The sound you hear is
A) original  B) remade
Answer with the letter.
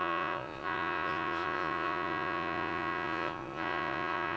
B